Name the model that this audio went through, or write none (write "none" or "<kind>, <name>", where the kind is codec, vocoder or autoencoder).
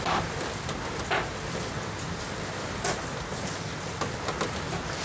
none